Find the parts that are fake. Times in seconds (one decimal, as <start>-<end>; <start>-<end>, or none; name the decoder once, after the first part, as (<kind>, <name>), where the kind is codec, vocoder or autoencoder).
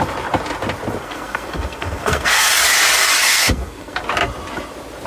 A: 1.0-2.5 (codec, SNAC); 3.3-4.0